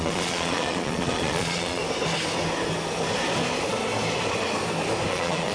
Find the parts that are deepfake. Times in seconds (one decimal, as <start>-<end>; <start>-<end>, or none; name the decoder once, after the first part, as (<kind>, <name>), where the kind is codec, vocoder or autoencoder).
0.0-1.8 (vocoder, Vocos); 5.1-5.5